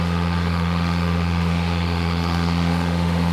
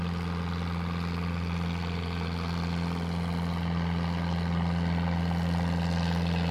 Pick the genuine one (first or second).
second